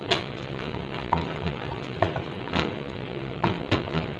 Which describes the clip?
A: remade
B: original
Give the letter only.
A